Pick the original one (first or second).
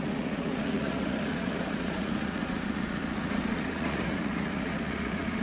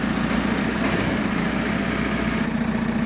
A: second